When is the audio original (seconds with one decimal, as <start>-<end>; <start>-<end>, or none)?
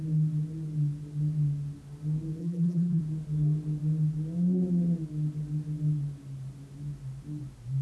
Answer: 0.0-2.4; 3.0-7.8